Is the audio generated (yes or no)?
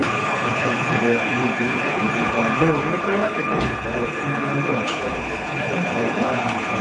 yes